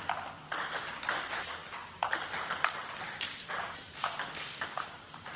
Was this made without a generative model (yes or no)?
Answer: no